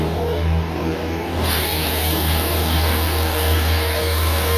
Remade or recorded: remade